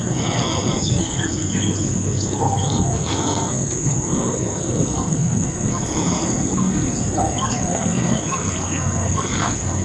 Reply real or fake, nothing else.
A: fake